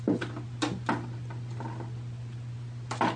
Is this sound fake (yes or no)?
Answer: no